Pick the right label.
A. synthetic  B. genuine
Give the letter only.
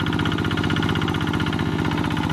B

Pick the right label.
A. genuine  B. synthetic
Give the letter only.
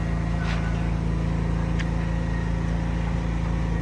A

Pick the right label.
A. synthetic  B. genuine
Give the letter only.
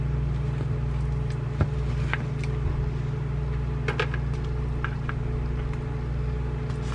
B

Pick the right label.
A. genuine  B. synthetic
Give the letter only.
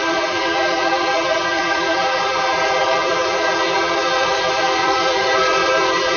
B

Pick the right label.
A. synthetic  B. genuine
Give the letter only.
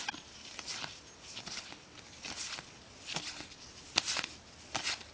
B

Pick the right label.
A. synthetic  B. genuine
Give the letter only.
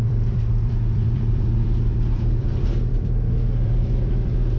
A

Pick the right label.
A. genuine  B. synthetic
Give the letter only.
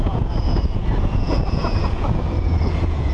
B